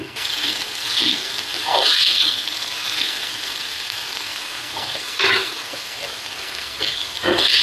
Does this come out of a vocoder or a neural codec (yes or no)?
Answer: yes